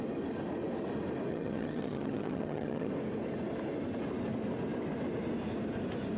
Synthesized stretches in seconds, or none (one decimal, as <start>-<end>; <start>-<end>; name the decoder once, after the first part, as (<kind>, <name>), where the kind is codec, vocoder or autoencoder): 1.3-2.9 (vocoder, HiFi-GAN)